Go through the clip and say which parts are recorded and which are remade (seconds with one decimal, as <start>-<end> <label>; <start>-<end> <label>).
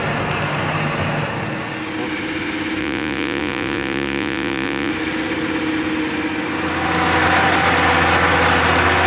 0.0-2.8 recorded; 2.8-4.9 remade; 4.9-9.1 recorded